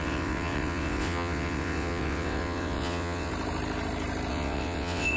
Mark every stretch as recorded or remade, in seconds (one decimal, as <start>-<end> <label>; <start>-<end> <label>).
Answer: 0.0-3.3 remade; 3.3-4.3 recorded; 4.3-5.2 remade

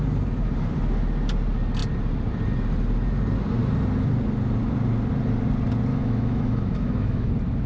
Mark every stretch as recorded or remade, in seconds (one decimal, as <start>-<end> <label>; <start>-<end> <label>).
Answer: 0.0-5.9 recorded; 5.9-7.3 remade; 7.3-7.7 recorded

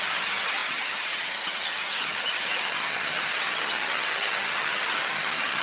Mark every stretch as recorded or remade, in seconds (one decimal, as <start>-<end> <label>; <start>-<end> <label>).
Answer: 0.0-5.6 remade

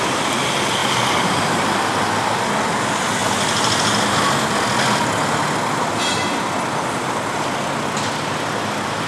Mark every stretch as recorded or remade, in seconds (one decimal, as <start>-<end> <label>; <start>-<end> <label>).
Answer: 0.0-9.1 recorded